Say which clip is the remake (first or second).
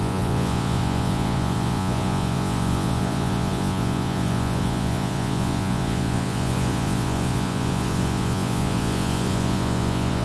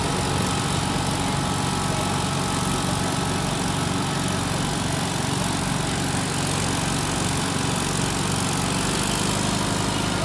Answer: first